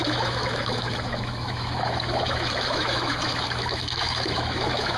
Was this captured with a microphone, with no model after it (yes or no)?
no